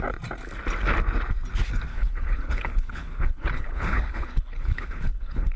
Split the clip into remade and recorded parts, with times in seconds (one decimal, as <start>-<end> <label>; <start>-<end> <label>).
0.0-1.9 recorded; 1.9-5.6 remade

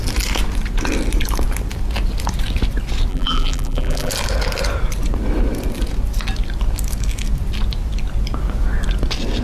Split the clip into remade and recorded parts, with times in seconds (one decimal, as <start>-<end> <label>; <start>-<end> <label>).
0.0-3.1 recorded; 3.1-4.1 remade; 4.1-9.4 recorded

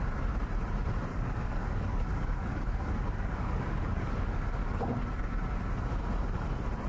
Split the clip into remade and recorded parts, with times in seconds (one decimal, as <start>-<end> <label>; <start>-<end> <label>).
0.0-1.1 recorded; 1.1-4.8 remade; 4.8-6.9 recorded

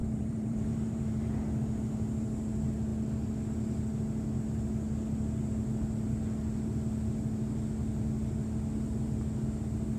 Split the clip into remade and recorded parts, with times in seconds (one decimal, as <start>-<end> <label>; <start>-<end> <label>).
0.0-1.3 remade; 1.3-10.0 recorded

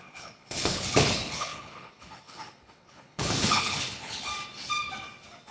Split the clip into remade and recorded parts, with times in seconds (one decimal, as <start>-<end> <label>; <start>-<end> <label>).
0.0-4.3 remade; 4.3-5.5 recorded

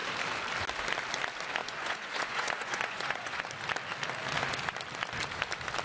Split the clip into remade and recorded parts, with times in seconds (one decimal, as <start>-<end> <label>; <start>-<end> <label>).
0.0-1.6 recorded; 1.6-3.4 remade; 3.4-5.8 recorded

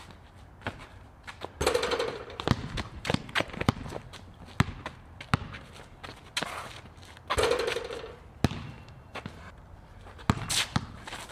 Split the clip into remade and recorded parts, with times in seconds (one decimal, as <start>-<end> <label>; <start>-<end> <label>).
0.0-2.6 recorded; 2.6-3.9 remade; 3.9-11.3 recorded